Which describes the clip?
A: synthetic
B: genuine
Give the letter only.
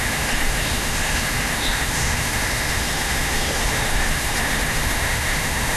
A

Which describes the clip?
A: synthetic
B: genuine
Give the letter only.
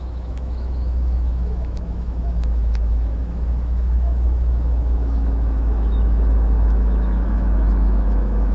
A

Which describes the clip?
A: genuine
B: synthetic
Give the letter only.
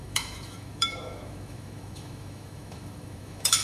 B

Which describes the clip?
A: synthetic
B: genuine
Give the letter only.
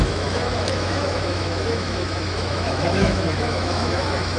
A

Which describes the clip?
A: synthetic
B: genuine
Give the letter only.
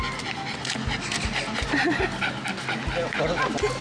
B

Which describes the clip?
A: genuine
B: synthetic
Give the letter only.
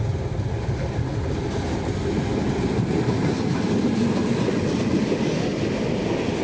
A